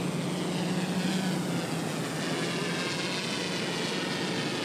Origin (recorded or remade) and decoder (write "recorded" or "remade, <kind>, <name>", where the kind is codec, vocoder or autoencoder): recorded